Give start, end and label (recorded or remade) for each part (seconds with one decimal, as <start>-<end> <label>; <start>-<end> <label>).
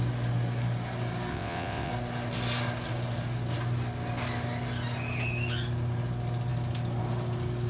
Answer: 0.0-1.3 recorded; 1.3-1.9 remade; 1.9-7.7 recorded